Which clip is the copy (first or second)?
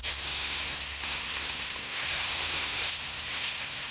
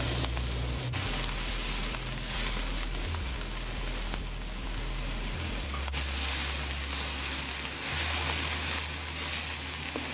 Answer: first